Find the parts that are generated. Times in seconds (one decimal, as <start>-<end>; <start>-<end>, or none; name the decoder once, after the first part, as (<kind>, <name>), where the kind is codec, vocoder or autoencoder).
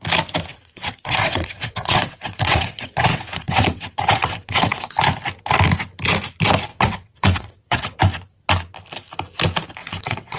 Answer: 0.5-4.9 (vocoder, WaveNeXt); 6.7-8.0; 9.8-10.4